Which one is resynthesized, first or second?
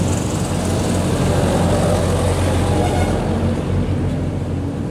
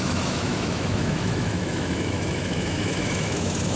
second